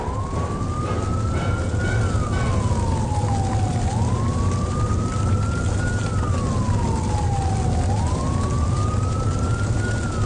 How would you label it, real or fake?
real